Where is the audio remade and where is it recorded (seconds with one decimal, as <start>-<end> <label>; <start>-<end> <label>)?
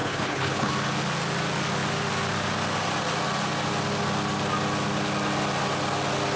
0.0-0.7 remade; 0.7-6.4 recorded